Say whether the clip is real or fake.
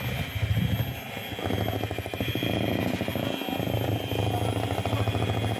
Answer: real